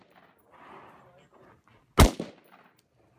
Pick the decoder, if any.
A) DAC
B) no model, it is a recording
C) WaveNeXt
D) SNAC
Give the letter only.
B